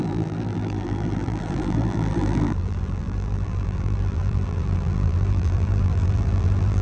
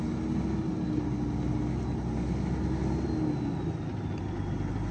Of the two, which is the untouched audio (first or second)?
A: second